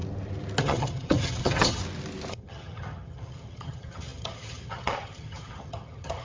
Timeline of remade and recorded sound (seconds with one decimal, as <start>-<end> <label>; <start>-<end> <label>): 0.0-0.6 recorded; 0.6-1.8 remade; 1.8-2.3 recorded; 2.3-6.2 remade